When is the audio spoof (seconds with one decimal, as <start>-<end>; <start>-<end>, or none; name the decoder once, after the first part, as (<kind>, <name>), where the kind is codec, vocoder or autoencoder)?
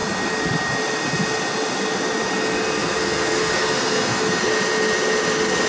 2.8-4.4 (codec, SNAC)